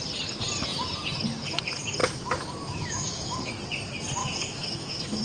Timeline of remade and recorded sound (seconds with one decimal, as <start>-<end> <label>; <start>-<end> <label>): 0.0-2.0 recorded; 2.0-3.5 remade; 3.5-4.2 recorded; 4.2-5.2 remade

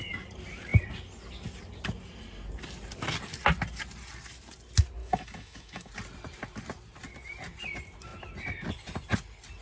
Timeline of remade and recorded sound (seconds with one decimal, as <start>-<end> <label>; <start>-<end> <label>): 0.0-5.0 recorded; 5.0-5.9 remade; 5.9-9.6 recorded

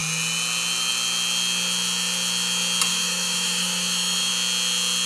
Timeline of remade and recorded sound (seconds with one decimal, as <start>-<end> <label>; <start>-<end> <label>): 0.0-2.9 recorded; 2.9-4.3 remade; 4.3-5.1 recorded

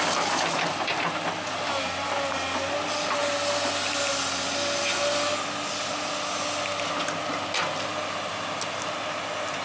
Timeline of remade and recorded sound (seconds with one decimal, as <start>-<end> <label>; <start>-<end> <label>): 0.0-9.6 recorded

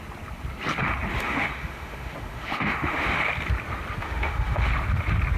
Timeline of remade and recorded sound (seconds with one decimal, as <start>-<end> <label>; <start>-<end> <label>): 0.0-1.1 recorded; 1.1-3.2 remade; 3.2-4.0 recorded; 4.0-4.7 remade; 4.7-5.4 recorded